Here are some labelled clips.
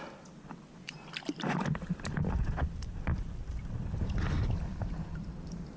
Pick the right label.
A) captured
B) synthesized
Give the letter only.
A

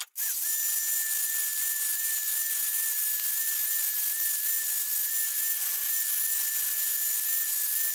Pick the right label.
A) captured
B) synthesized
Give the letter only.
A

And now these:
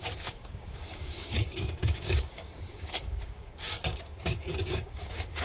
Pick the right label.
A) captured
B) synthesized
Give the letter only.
B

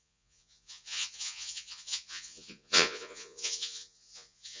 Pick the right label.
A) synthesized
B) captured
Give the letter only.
A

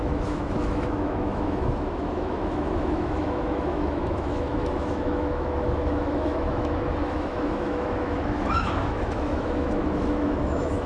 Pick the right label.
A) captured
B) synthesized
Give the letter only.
B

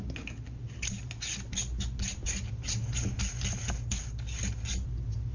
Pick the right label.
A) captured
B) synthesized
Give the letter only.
A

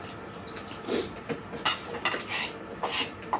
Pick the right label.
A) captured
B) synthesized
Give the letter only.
A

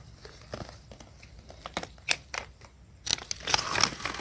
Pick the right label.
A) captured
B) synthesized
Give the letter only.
A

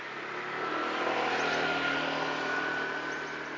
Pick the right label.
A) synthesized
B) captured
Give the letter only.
B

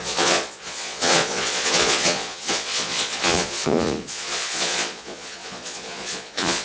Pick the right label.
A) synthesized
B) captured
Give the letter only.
A